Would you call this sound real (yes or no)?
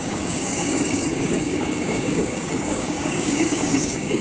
no